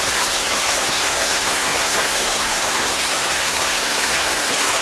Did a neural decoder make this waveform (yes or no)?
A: yes